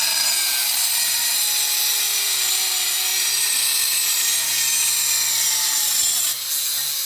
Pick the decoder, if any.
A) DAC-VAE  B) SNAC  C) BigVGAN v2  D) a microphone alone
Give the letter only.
D